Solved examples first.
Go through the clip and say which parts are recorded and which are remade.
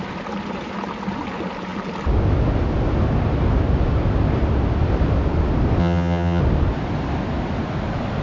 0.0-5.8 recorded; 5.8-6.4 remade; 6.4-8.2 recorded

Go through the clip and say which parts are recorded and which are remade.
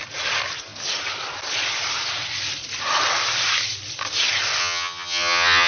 0.0-4.6 recorded; 4.6-5.7 remade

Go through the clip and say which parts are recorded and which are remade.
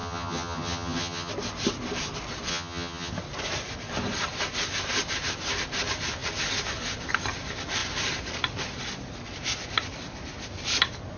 0.0-1.3 remade; 1.3-2.5 recorded; 2.5-3.1 remade; 3.1-11.2 recorded